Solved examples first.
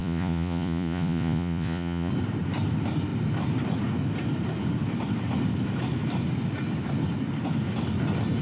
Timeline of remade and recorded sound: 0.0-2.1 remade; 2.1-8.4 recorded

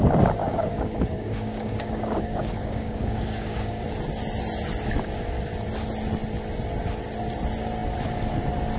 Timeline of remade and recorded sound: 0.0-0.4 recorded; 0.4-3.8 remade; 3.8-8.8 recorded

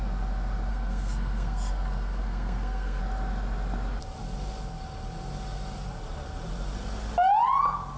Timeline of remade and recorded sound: 0.0-0.7 recorded; 0.7-3.0 remade; 3.0-8.0 recorded

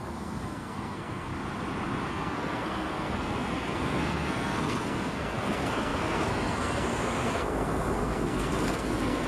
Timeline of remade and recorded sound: 0.0-1.3 remade; 1.3-2.1 recorded; 2.1-9.3 remade

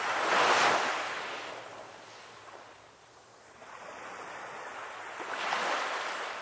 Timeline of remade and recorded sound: 0.0-6.4 recorded